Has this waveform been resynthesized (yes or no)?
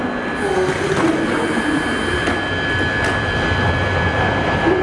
no